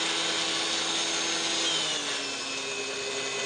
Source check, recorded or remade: recorded